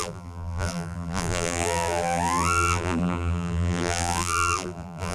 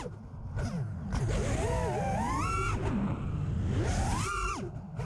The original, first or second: second